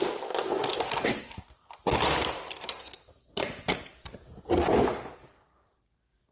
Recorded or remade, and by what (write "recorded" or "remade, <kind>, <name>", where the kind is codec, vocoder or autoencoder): recorded